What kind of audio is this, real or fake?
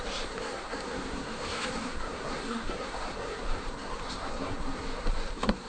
fake